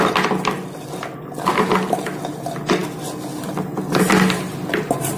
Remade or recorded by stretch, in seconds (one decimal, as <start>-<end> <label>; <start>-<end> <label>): 0.0-5.2 recorded